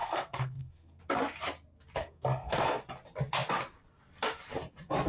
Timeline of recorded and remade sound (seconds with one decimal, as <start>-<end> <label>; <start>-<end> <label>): 0.0-1.0 remade; 1.0-2.0 recorded; 2.0-2.8 remade; 2.8-5.1 recorded